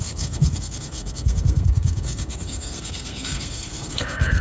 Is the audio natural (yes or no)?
no